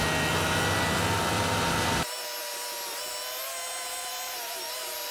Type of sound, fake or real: real